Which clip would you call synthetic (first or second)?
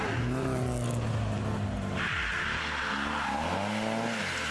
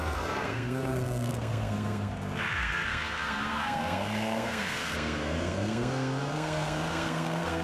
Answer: second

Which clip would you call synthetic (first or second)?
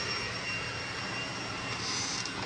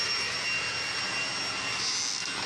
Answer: first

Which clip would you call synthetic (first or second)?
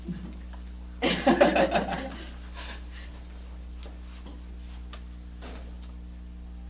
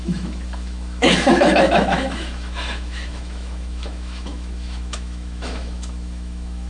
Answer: second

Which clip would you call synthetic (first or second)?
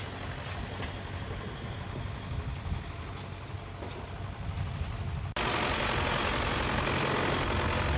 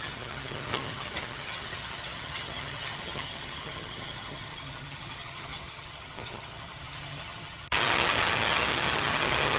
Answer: second